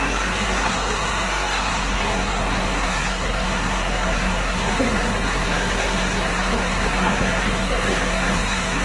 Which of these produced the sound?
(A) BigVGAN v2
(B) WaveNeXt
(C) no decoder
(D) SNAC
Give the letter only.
D